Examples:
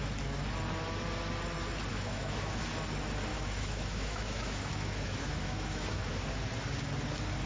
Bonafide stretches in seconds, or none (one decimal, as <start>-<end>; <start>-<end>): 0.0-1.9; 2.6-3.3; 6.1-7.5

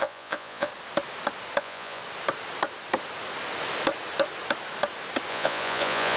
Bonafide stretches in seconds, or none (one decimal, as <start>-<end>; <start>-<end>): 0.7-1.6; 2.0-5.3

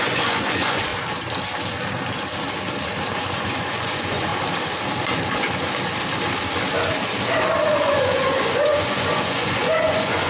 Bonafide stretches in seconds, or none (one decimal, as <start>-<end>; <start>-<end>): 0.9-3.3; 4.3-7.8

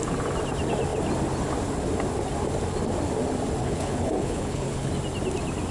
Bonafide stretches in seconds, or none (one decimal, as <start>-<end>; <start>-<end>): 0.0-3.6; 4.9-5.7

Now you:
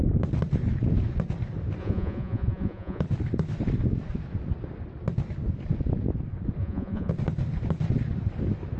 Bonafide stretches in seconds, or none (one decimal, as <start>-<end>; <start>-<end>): 0.0-1.8; 3.0-6.6; 7.1-8.8